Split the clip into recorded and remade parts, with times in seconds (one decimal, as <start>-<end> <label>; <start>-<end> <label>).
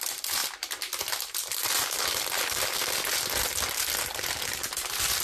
0.0-5.2 recorded